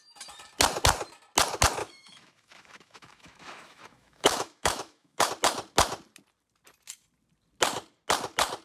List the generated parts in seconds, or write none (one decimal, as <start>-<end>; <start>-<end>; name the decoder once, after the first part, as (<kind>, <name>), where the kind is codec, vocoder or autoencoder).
1.8-5.3 (autoencoder, DAC-VAE)